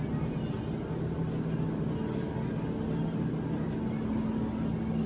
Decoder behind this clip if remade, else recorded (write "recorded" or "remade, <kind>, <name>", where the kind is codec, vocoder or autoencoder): recorded